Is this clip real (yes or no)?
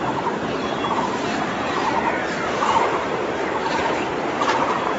no